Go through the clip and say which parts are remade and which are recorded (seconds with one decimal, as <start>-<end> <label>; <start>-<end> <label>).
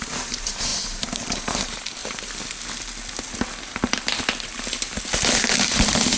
0.0-2.0 remade; 2.0-5.7 recorded; 5.7-6.2 remade